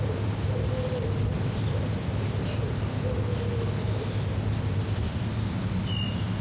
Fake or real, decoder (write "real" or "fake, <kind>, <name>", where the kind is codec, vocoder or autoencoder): real